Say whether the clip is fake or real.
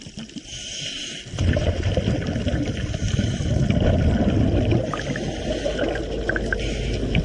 real